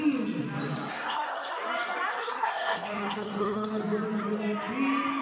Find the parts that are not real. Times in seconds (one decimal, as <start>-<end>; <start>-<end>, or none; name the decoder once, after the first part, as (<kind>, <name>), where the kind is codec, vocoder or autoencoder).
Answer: 0.9-1.5 (codec, SNAC); 2.1-3.8